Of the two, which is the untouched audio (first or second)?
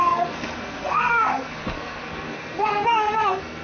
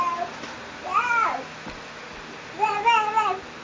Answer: second